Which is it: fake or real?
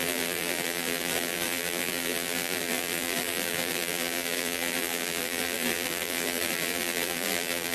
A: fake